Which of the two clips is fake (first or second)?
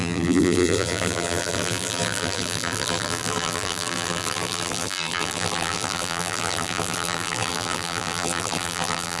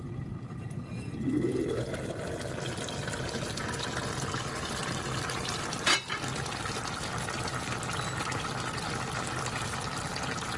first